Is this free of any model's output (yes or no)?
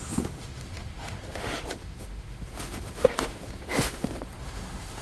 no